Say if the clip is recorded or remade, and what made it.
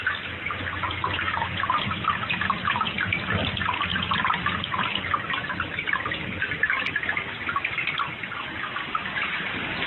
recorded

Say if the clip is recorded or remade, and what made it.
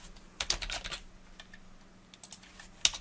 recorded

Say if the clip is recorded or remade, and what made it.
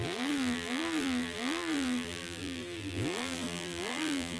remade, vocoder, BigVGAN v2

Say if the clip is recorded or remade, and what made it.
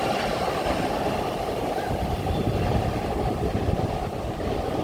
remade, vocoder, BigVGAN v2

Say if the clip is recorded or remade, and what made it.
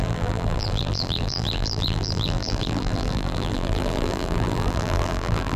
remade, vocoder, BigVGAN v2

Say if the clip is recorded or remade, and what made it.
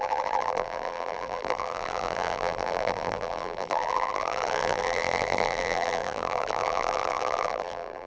remade, vocoder, BigVGAN v2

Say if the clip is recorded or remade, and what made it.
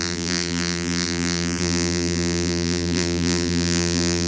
remade, vocoder, BigVGAN v2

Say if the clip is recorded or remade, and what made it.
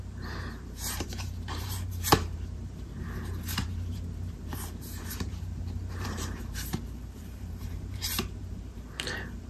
remade, vocoder, BigVGAN v2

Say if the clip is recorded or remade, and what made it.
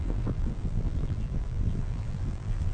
remade, vocoder, BigVGAN v2